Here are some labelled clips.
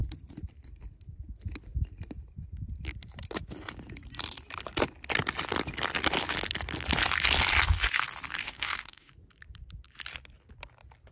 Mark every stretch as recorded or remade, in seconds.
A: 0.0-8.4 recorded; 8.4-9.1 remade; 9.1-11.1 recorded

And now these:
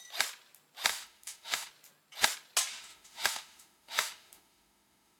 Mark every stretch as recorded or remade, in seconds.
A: 0.0-0.9 recorded; 0.9-1.7 remade; 1.7-2.7 recorded; 2.7-5.2 remade

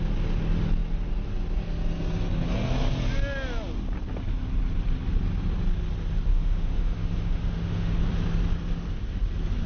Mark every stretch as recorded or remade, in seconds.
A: 0.0-6.3 recorded; 6.3-8.0 remade; 8.0-9.7 recorded

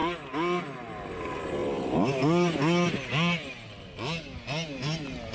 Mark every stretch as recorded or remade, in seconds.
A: 0.0-5.3 recorded

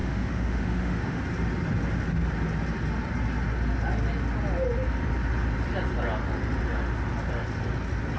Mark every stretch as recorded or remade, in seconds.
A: 0.0-1.2 remade; 1.2-8.2 recorded

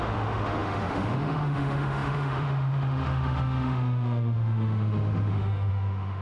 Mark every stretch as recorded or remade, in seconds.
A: 0.0-6.2 remade

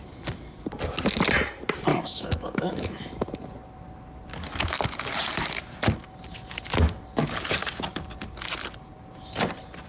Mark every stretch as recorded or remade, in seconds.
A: 0.0-1.9 recorded; 1.9-3.1 remade; 3.1-9.9 recorded